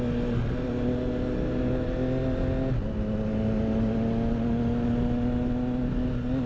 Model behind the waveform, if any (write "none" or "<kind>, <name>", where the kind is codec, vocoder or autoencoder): none